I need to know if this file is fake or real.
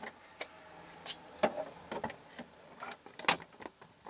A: real